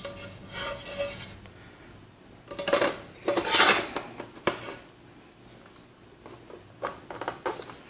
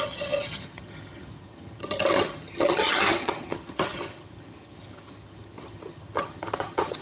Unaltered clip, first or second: first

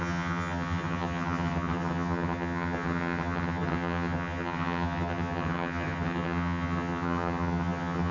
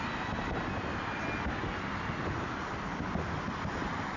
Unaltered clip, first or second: second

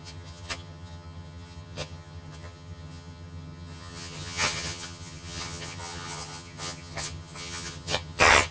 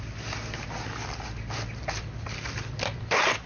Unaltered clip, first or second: second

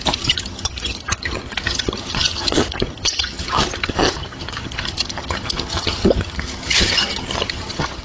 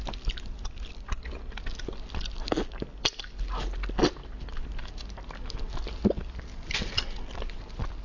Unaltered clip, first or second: second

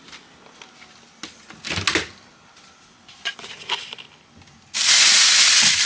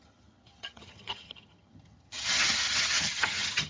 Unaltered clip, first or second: first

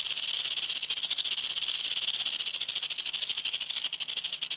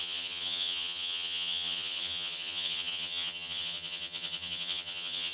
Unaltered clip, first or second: first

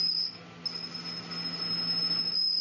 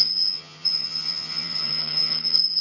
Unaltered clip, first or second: first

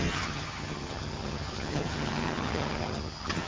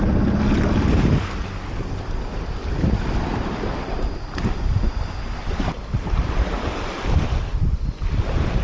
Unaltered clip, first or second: second